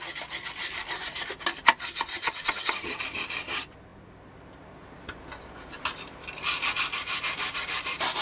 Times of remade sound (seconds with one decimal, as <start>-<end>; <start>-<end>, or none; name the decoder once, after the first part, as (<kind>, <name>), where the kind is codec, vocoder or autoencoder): 2.1-3.0 (vocoder, HiFi-GAN)